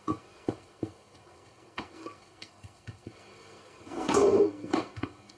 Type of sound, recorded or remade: remade